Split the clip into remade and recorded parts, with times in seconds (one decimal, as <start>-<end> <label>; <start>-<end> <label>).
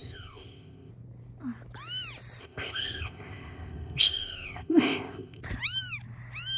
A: 0.0-0.9 remade; 0.9-2.4 recorded; 2.4-5.4 remade; 5.4-6.6 recorded